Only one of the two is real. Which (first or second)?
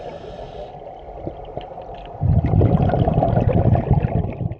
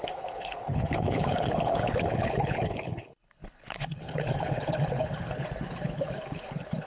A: first